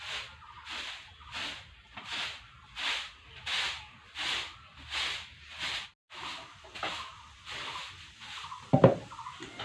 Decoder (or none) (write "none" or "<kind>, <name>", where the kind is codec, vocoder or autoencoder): none